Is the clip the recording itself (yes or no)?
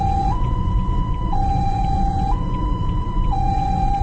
no